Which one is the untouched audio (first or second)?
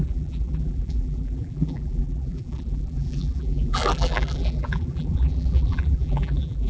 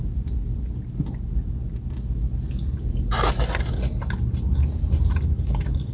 second